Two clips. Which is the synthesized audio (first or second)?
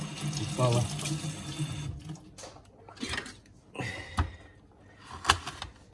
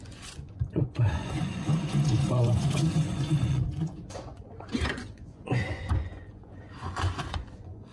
second